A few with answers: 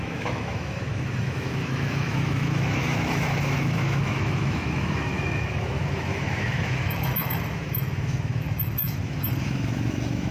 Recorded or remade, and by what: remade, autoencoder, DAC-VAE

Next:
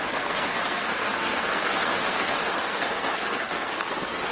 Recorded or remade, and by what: remade, codec, SNAC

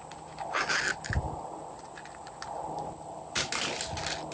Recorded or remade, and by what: recorded